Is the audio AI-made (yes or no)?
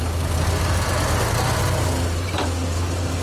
no